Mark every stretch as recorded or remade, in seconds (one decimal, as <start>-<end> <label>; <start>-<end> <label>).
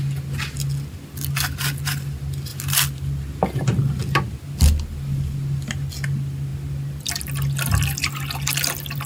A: 0.0-9.1 recorded